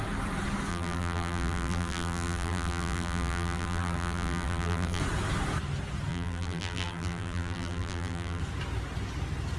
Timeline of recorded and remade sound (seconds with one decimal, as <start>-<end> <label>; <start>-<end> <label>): 0.0-0.7 recorded; 0.7-5.0 remade; 5.0-6.1 recorded; 6.1-8.4 remade; 8.4-9.6 recorded